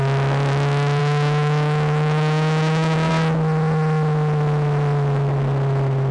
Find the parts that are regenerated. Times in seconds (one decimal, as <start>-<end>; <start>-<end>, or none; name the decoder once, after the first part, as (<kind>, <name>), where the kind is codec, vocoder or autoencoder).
1.0-3.1 (autoencoder, DAC-VAE)

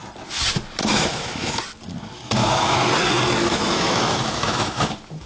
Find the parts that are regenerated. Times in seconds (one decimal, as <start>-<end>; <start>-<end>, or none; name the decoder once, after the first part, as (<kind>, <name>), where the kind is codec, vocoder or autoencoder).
0.8-1.6 (autoencoder, DAC-VAE); 2.4-2.9; 3.4-5.3

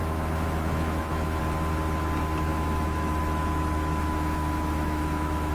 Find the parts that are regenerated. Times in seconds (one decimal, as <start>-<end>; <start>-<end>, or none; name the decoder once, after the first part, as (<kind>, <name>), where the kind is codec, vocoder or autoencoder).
0.0-1.4 (autoencoder, DAC-VAE); 2.5-5.5

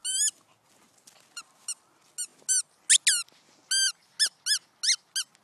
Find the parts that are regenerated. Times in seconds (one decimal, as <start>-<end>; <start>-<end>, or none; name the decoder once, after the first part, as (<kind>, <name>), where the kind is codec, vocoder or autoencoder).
none

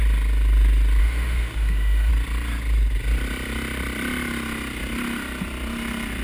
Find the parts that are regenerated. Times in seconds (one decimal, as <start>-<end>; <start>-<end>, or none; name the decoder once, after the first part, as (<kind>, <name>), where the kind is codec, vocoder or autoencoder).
1.0-2.1 (autoencoder, DAC-VAE)

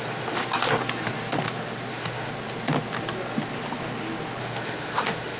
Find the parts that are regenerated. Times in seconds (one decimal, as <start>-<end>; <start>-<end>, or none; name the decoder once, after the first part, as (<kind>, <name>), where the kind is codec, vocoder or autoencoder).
0.0-0.4 (autoencoder, DAC-VAE); 1.9-2.3; 4.4-5.4

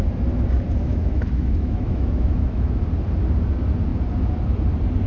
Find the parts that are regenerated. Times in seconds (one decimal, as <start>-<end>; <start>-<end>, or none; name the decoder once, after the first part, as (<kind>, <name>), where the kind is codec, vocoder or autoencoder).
0.8-2.8 (autoencoder, DAC-VAE)